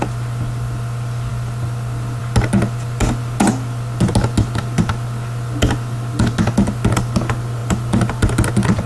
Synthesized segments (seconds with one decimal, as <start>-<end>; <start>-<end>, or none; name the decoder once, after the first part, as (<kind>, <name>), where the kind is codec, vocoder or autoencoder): none